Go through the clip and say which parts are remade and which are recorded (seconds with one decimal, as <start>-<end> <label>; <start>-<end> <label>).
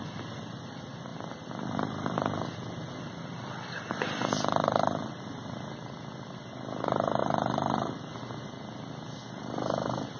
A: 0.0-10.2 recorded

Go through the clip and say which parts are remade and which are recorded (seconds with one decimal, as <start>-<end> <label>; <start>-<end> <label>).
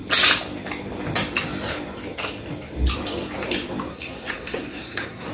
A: 0.0-3.9 recorded; 3.9-5.3 remade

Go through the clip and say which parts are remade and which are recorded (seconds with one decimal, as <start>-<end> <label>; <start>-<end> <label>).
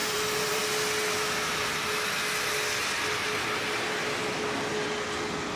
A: 0.0-0.6 remade; 0.6-5.6 recorded